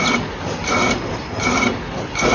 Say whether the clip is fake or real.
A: real